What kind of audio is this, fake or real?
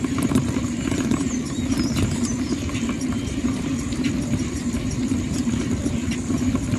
fake